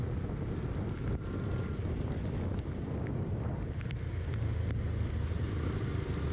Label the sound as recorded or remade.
recorded